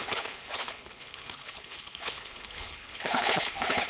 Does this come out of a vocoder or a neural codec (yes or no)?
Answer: yes